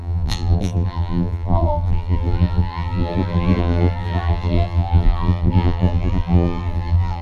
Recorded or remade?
remade